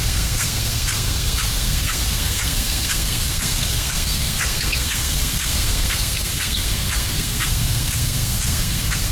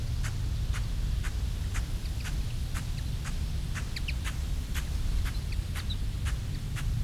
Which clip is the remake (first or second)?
first